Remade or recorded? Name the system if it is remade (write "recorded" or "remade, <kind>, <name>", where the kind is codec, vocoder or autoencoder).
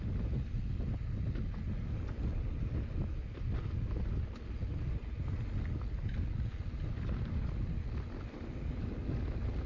recorded